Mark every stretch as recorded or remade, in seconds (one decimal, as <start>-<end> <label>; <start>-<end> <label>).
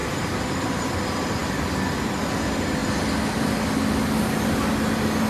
0.0-0.5 remade; 0.5-5.3 recorded